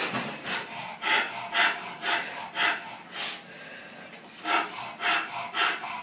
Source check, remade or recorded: recorded